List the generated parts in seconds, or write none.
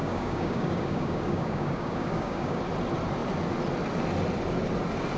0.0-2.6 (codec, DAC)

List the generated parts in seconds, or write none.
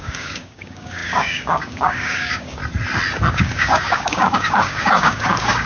0.0-2.6 (codec, DAC); 3.3-5.7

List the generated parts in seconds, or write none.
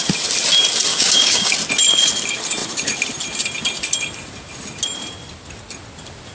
0.9-1.5 (codec, DAC)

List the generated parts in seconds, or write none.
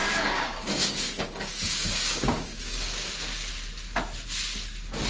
0.0-3.1 (codec, DAC)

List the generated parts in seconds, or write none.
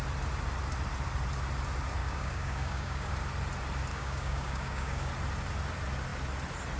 2.0-3.1 (codec, DAC); 3.9-5.1